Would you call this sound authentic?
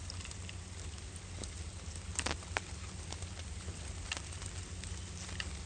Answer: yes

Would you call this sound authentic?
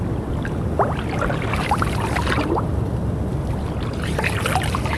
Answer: yes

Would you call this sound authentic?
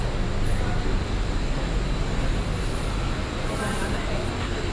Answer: yes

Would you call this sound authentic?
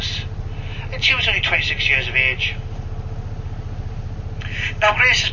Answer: yes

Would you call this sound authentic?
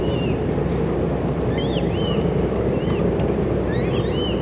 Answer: yes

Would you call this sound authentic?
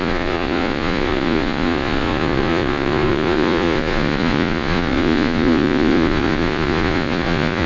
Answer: no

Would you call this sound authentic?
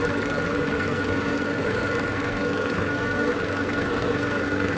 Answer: no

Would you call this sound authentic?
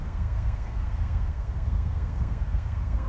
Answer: no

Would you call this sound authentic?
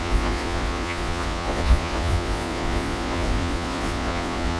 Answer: no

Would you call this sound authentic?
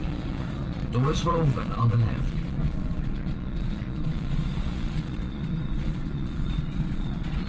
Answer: no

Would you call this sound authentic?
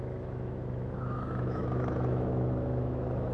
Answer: no